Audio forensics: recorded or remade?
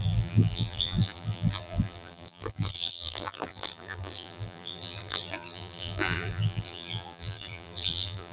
remade